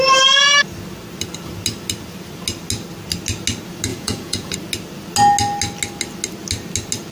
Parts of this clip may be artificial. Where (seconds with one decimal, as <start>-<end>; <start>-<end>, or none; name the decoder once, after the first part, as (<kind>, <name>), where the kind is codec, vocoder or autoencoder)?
3.9-4.5 (vocoder, Vocos)